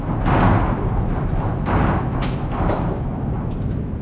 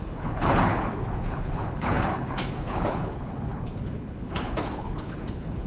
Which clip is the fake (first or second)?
second